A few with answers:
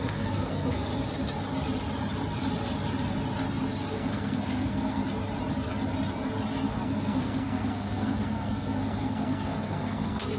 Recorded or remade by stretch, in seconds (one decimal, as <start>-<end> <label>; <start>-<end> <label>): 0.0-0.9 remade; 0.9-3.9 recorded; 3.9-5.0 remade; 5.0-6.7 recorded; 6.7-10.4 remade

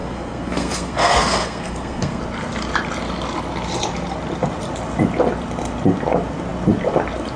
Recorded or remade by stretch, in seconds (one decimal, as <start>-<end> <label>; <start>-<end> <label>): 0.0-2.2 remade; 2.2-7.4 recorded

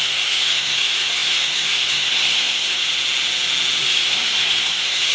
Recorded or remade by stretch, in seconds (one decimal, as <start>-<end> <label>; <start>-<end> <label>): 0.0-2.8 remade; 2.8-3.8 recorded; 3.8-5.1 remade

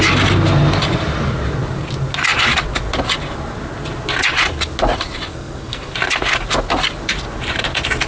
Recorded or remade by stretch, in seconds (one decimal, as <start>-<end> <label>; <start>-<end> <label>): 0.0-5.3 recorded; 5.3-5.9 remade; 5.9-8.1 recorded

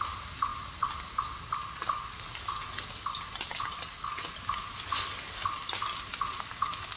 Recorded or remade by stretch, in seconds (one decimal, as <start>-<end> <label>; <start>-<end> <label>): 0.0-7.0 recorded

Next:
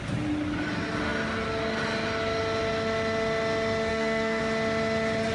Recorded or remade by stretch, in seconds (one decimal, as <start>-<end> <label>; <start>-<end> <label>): 0.0-3.9 recorded; 3.9-4.4 remade; 4.4-5.3 recorded